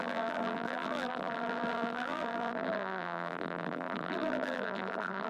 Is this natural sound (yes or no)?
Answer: no